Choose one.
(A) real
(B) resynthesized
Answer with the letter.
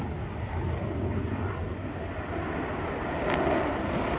A